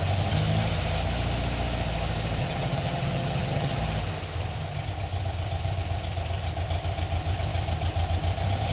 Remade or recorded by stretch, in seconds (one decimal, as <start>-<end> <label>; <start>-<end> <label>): 0.0-2.4 recorded; 2.4-3.8 remade; 3.8-8.7 recorded